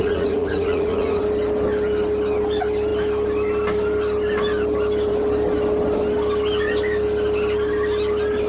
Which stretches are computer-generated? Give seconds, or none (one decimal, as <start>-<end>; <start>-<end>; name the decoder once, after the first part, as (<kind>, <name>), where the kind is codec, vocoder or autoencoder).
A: 0.0-1.2 (vocoder, Vocos)